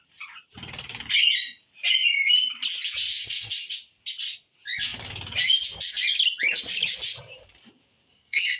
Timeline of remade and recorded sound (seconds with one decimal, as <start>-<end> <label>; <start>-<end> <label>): 0.0-3.2 recorded; 3.2-3.7 remade; 3.7-8.1 recorded; 8.1-8.6 remade